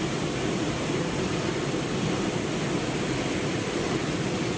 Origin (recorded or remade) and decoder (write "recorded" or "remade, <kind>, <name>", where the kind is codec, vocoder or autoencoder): recorded